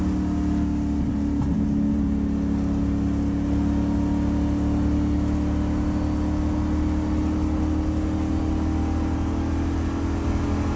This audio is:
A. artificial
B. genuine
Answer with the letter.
B